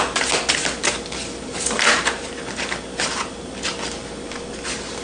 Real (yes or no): yes